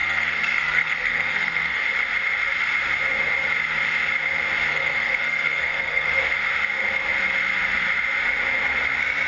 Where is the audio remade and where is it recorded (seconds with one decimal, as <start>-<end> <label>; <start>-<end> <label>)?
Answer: 0.0-1.8 remade; 1.8-4.7 recorded; 4.7-6.2 remade; 6.2-9.3 recorded